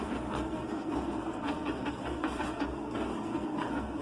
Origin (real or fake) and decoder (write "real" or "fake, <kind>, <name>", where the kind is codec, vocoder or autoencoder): fake, codec, SNAC